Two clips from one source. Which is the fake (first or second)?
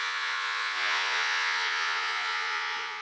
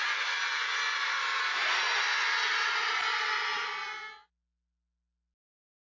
first